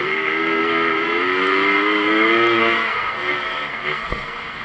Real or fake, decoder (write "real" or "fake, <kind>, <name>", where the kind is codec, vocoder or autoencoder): fake, codec, SNAC